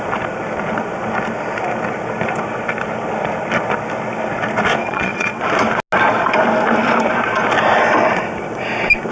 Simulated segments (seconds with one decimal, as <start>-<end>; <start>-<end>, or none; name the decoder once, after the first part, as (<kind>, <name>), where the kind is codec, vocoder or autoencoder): 4.8-5.4 (vocoder, WaveNeXt)